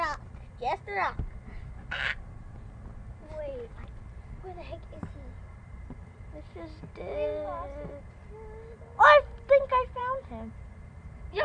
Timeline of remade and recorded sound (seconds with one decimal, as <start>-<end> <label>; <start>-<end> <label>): 0.0-11.4 recorded